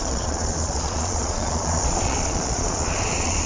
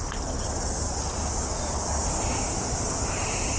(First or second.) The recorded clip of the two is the second